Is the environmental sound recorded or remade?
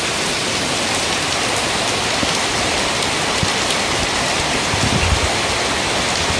recorded